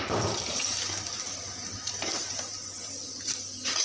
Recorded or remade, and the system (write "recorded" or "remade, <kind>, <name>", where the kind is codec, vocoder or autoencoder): recorded